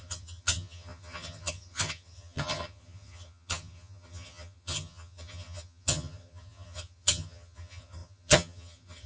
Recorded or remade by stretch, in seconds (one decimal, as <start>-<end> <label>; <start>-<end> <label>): 0.0-9.1 remade